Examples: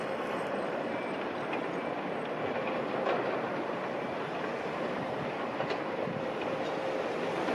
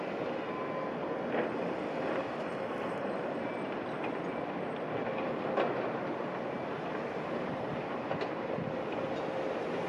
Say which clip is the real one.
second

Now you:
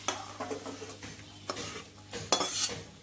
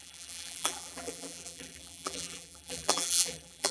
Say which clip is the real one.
first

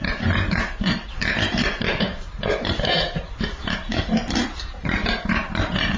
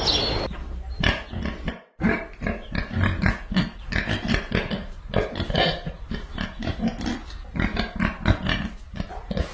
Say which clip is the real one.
second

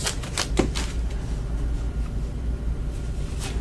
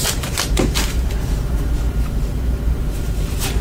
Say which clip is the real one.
first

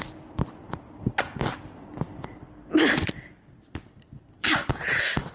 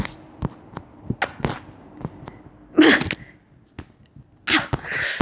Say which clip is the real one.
second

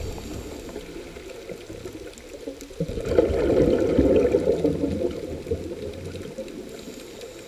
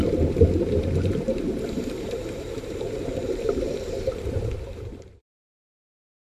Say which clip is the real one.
first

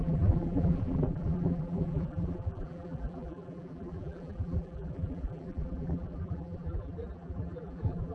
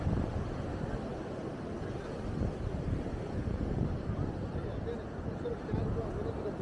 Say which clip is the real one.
second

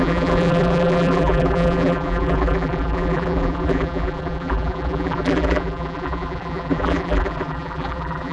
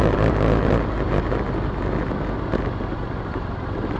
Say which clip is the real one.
second